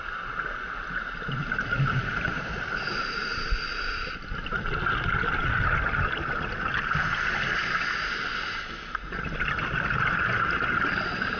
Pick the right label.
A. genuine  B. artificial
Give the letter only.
A